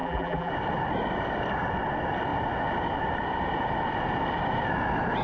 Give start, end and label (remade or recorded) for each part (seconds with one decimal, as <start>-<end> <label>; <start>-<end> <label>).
0.0-0.5 remade; 0.5-5.2 recorded